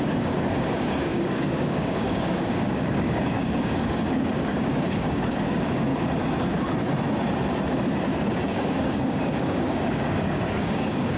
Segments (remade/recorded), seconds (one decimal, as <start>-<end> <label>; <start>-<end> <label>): 0.0-5.9 remade; 5.9-8.3 recorded; 8.3-11.2 remade